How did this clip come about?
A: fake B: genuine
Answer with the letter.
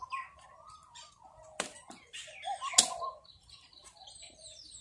B